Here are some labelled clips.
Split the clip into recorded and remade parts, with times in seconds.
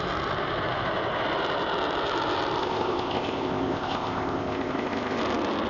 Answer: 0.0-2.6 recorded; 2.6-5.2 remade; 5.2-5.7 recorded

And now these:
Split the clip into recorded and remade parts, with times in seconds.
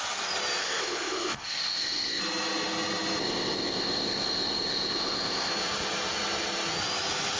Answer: 0.0-0.6 recorded; 0.6-2.2 remade; 2.2-3.2 recorded; 3.2-5.5 remade; 5.5-7.4 recorded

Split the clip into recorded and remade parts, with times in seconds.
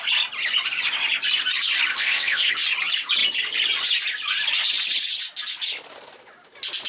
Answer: 0.0-1.9 recorded; 1.9-2.5 remade; 2.5-6.9 recorded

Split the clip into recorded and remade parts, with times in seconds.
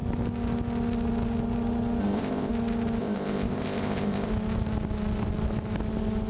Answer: 0.0-2.0 recorded; 2.0-2.5 remade; 2.5-3.0 recorded; 3.0-4.3 remade; 4.3-6.3 recorded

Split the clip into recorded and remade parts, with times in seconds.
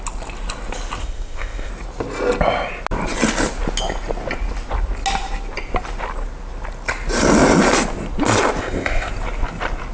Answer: 0.0-1.0 recorded; 1.0-1.7 remade; 1.7-8.6 recorded; 8.6-9.1 remade; 9.1-9.9 recorded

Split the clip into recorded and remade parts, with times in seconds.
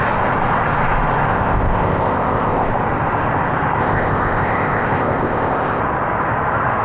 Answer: 0.0-1.3 recorded; 1.3-2.7 remade; 2.7-3.8 recorded; 3.8-5.8 remade; 5.8-6.8 recorded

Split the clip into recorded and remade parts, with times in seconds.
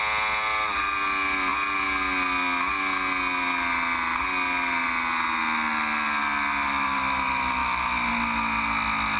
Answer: 0.0-9.2 recorded